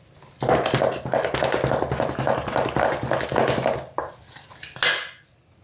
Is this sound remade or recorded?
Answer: recorded